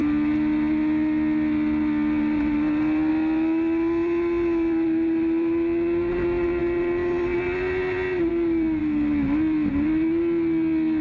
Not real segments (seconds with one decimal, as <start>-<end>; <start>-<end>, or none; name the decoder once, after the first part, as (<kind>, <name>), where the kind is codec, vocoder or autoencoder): none